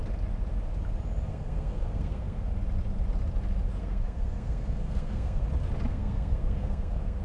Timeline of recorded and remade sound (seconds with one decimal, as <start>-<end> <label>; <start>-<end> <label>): 0.0-1.3 recorded; 1.3-2.5 remade; 2.5-3.8 recorded; 3.8-5.4 remade; 5.4-5.9 recorded; 5.9-7.2 remade